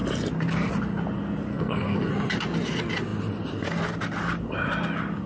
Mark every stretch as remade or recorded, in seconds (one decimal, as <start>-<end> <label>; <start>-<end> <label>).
0.0-1.5 recorded; 1.5-2.1 remade; 2.1-5.3 recorded